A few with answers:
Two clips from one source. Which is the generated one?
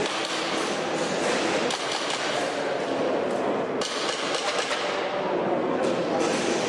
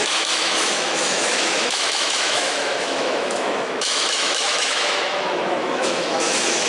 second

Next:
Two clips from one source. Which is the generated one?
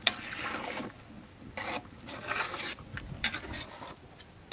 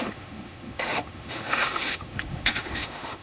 second